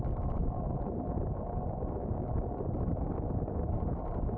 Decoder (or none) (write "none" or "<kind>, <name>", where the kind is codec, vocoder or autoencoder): none